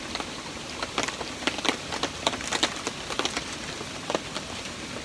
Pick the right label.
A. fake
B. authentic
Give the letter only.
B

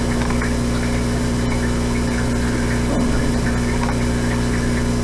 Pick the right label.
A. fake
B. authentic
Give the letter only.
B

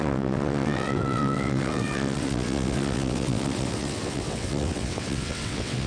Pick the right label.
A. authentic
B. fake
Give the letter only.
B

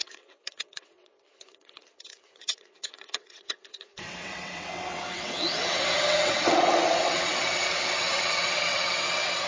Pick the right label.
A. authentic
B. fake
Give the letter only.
B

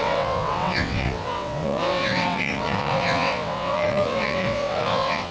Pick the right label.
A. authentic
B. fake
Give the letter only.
B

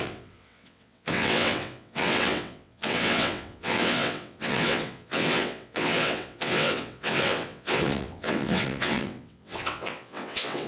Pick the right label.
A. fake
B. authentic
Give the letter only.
A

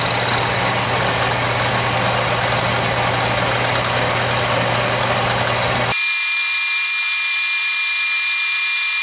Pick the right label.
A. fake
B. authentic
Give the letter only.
B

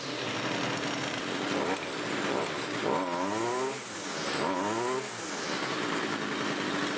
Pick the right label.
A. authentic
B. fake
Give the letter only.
A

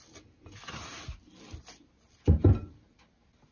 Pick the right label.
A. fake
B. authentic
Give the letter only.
B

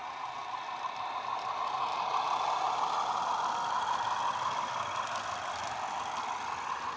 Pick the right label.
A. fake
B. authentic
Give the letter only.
B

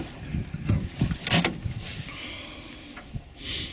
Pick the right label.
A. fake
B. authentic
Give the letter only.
B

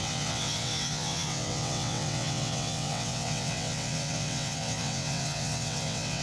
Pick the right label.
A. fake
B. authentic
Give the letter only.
A